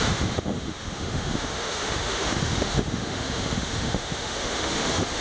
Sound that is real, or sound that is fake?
fake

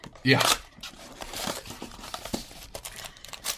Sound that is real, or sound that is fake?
fake